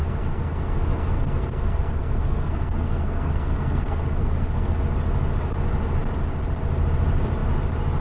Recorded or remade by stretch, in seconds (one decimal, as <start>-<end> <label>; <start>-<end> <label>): 0.0-4.8 remade; 4.8-8.0 recorded